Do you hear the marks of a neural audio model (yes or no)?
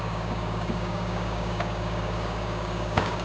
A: yes